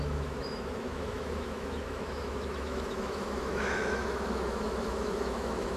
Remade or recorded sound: remade